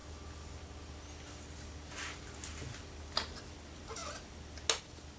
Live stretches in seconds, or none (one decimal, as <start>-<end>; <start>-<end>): 0.0-5.2